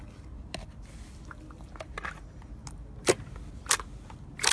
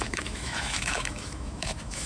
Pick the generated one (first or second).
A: second